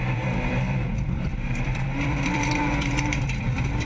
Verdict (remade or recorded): remade